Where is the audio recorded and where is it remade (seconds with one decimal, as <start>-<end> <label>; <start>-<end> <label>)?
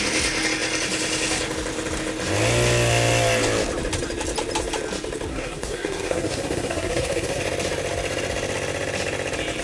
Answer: 0.0-5.3 recorded; 5.3-7.4 remade; 7.4-9.6 recorded